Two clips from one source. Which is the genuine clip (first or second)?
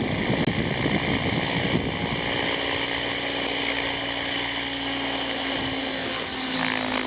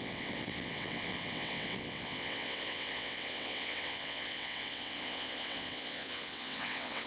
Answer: first